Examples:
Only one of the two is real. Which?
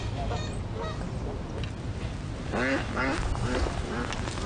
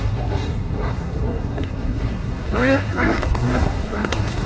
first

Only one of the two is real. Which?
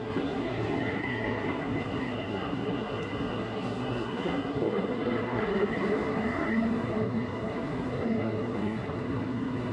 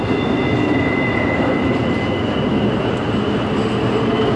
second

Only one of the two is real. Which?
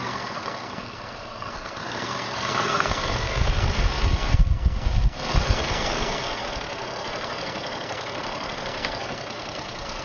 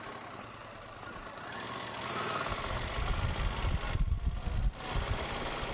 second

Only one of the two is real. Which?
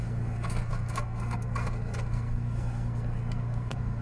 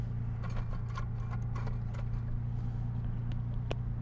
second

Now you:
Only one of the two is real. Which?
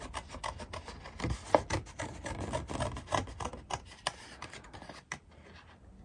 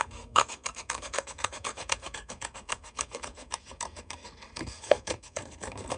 first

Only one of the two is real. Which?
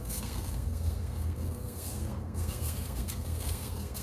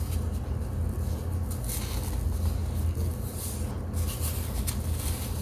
second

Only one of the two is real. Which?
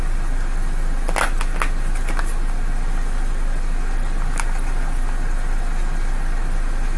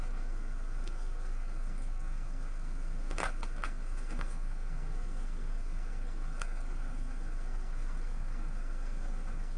first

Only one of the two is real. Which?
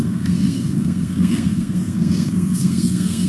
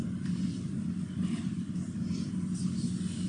second